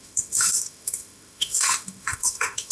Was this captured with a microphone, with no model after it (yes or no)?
no